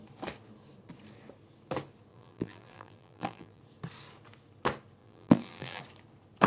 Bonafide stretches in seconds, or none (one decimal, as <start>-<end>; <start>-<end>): 0.0-2.1; 3.6-5.0; 5.8-6.5